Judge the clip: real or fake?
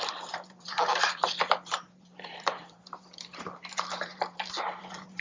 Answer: fake